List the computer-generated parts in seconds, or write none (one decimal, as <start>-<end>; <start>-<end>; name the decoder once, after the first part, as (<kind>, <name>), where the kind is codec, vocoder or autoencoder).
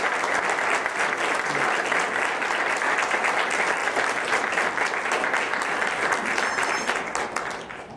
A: none